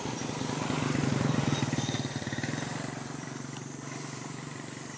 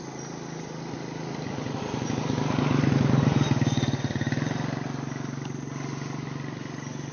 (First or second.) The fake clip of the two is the first